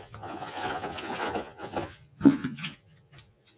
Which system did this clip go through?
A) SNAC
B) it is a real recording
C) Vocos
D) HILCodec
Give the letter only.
C